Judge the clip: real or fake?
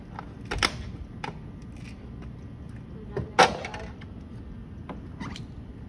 real